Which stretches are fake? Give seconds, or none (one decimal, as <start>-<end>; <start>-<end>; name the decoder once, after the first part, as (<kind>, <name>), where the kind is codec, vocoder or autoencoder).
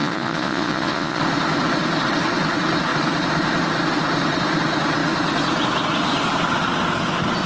0.0-1.2 (vocoder, Vocos)